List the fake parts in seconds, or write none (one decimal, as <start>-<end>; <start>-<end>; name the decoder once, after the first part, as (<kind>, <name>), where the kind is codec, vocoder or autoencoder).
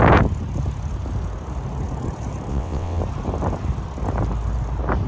2.5-3.0 (vocoder, WaveNeXt)